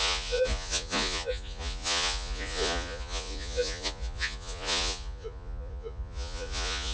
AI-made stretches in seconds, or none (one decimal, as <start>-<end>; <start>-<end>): 0.0-6.9

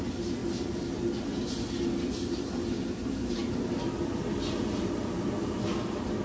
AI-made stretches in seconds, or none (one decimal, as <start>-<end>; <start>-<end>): none

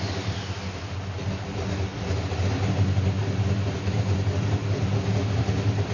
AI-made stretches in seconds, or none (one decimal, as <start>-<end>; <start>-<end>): none